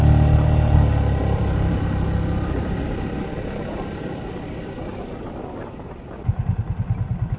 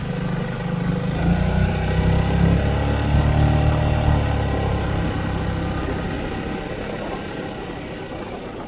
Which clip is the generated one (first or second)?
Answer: first